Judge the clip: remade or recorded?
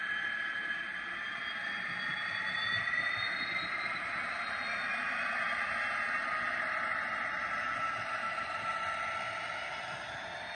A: recorded